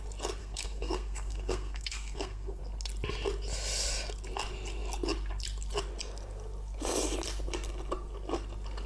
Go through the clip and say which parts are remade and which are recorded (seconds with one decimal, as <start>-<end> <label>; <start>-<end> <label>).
0.0-0.4 recorded; 0.4-2.6 remade; 2.6-8.9 recorded